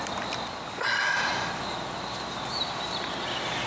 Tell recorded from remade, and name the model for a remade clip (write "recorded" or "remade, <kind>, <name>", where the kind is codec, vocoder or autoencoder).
recorded